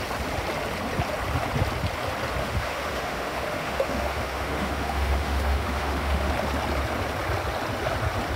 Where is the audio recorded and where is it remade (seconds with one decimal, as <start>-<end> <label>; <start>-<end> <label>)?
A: 0.0-2.4 recorded; 2.4-6.3 remade; 6.3-8.4 recorded